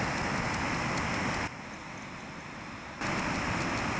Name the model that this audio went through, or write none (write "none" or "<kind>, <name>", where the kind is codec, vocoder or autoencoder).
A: none